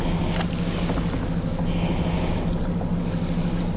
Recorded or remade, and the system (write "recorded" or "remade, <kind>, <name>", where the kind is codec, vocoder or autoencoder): recorded